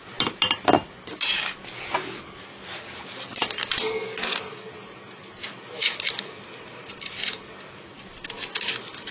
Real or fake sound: real